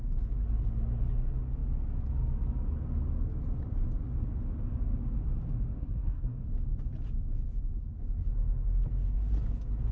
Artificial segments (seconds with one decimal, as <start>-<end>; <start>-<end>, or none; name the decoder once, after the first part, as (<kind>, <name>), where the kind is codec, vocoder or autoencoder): 5.8-6.4 (codec, SNAC)